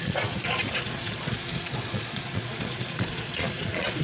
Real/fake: fake